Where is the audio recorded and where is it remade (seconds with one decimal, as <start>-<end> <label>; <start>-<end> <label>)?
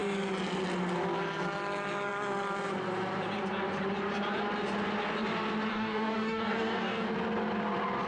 0.0-5.7 recorded; 5.7-7.1 remade; 7.1-8.1 recorded